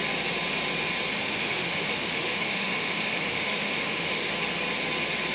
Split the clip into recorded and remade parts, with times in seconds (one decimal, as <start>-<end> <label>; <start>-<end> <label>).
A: 0.0-1.1 recorded; 1.1-4.3 remade; 4.3-5.3 recorded